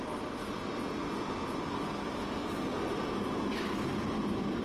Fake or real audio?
real